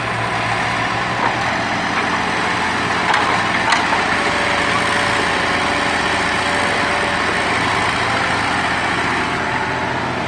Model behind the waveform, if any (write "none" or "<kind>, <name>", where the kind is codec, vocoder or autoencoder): none